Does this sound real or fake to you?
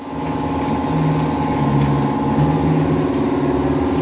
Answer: real